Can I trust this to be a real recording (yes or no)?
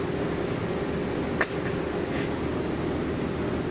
yes